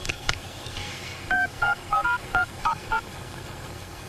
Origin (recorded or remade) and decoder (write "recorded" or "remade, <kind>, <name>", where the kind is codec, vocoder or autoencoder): remade, codec, SNAC